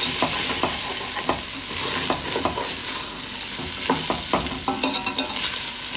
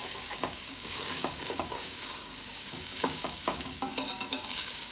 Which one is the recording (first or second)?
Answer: first